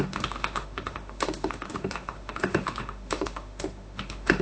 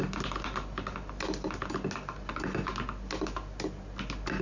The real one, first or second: second